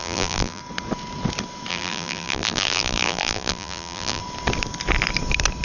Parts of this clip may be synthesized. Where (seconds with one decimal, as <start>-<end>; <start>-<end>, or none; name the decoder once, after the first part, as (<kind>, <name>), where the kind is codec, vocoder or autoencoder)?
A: 0.0-0.6 (vocoder, BigVGAN v2); 1.7-4.2